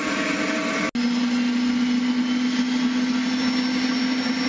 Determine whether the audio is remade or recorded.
recorded